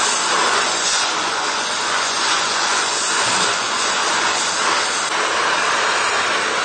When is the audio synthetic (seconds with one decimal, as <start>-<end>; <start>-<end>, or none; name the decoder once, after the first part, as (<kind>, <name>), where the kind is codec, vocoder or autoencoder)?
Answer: 0.4-4.4 (vocoder, Vocos)